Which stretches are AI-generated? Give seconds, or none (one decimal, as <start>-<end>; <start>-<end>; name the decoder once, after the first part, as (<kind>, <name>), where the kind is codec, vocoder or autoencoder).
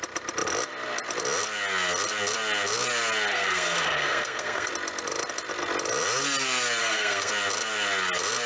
3.3-4.7 (codec, SNAC); 6.8-7.3